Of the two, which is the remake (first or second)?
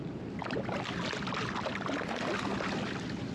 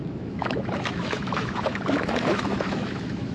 second